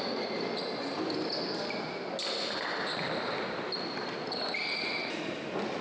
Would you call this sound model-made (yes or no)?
no